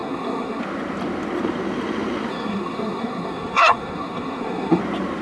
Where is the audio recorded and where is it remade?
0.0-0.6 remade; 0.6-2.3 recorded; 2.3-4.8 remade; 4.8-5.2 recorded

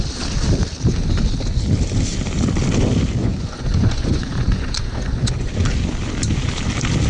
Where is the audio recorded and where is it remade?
0.0-3.2 recorded; 3.2-5.5 remade; 5.5-7.1 recorded

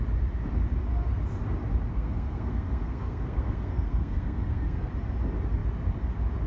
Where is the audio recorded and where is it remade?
0.0-1.9 recorded; 1.9-4.9 remade; 4.9-6.5 recorded

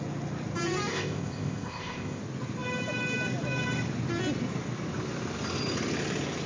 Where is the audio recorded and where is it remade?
0.0-0.9 recorded; 0.9-2.2 remade; 2.2-6.5 recorded

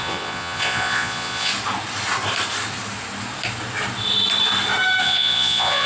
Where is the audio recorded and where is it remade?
0.0-1.5 remade; 1.5-5.0 recorded; 5.0-5.9 remade